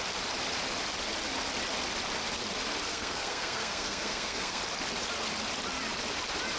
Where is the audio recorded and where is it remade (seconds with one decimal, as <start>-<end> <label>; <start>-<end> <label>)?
0.0-2.9 recorded; 2.9-4.6 remade; 4.6-6.6 recorded